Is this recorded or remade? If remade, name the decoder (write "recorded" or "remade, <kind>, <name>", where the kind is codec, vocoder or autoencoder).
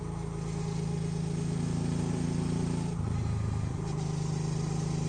recorded